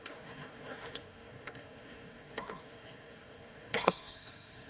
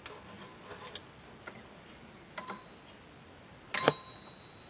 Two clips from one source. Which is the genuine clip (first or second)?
second